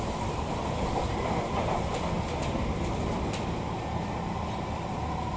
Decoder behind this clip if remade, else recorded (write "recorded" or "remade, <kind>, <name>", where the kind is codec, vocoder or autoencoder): recorded